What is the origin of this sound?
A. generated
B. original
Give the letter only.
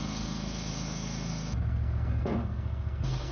A